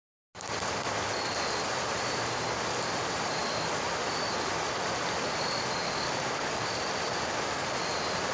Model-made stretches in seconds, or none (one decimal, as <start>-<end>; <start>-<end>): none